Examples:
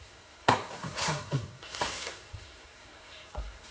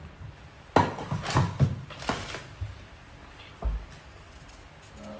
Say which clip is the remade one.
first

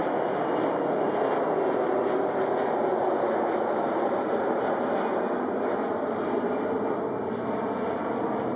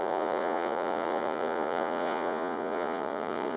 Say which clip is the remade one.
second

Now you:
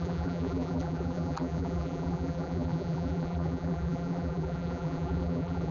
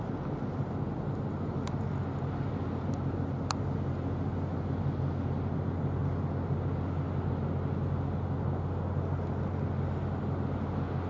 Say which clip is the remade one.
first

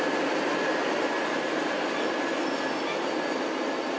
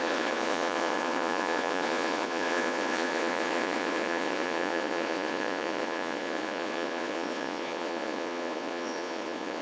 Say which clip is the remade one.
second